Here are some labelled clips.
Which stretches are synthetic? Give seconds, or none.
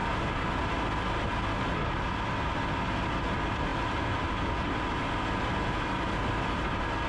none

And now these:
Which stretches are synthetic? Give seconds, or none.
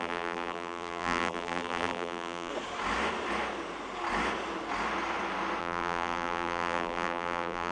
0.0-2.5 (vocoder, BigVGAN v2); 5.6-7.7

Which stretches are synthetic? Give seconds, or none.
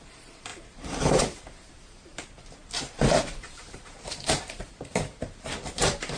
0.0-6.2 (vocoder, BigVGAN v2)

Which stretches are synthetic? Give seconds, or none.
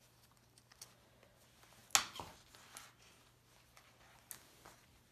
none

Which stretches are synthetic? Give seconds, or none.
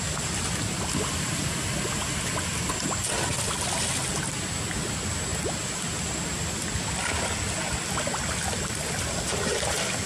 none